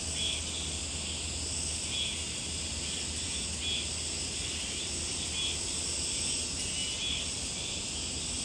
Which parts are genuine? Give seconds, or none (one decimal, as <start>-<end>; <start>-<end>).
0.0-8.4